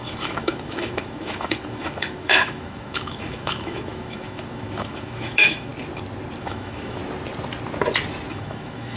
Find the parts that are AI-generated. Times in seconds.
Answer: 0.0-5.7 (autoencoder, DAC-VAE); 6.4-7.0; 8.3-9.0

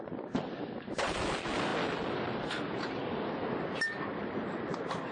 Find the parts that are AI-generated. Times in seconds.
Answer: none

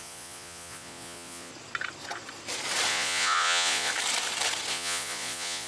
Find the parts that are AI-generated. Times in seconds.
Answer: 0.0-1.5 (vocoder, Vocos); 2.9-3.9; 4.7-5.7